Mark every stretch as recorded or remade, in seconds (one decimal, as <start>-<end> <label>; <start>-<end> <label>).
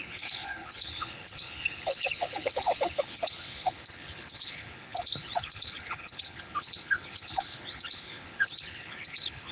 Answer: 0.0-9.5 remade